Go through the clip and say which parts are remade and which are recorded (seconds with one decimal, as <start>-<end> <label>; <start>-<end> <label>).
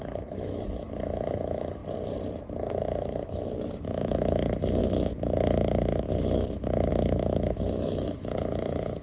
0.0-1.8 remade; 1.8-2.6 recorded; 2.6-9.0 remade